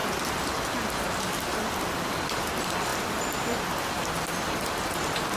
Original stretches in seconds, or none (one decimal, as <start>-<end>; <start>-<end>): none